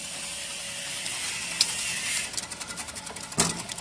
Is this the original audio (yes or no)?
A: yes